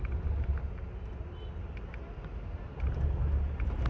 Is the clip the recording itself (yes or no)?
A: yes